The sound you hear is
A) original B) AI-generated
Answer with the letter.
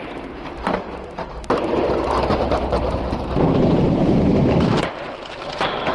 B